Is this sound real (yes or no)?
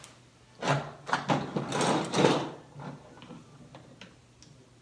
yes